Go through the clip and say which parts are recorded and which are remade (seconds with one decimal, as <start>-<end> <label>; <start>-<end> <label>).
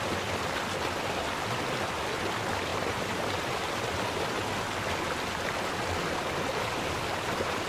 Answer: 0.0-2.7 recorded; 2.7-3.2 remade; 3.2-7.7 recorded